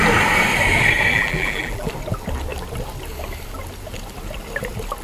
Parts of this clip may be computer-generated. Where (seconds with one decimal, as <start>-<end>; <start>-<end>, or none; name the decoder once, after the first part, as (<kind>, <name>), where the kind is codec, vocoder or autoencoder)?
1.1-1.9 (vocoder, BigVGAN v2)